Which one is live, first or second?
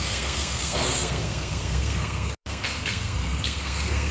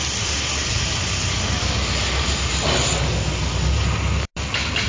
second